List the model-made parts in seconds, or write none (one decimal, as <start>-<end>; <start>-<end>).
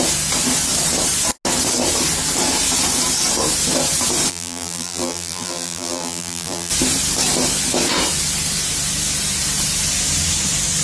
4.3-6.7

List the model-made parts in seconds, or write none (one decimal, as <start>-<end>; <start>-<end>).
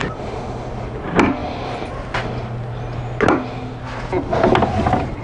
1.4-2.3